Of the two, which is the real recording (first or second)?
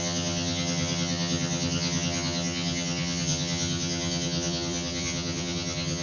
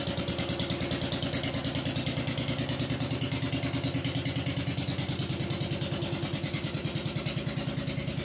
second